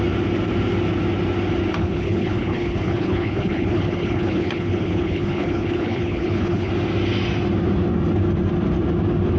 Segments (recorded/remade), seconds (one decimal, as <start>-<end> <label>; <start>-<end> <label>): 0.0-1.8 recorded; 1.8-6.7 remade; 6.7-9.4 recorded